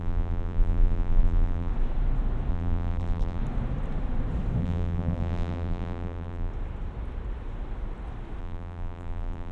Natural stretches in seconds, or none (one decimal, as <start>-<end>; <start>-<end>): 1.7-2.5; 3.4-4.6; 6.5-8.4